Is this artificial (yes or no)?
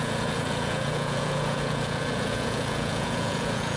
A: yes